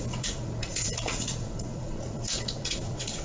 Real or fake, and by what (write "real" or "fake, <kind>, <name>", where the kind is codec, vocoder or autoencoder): fake, vocoder, Vocos